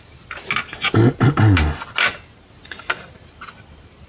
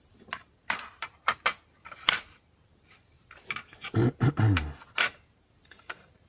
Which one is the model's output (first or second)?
second